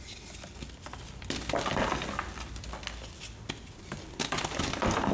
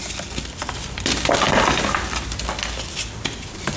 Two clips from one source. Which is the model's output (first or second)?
second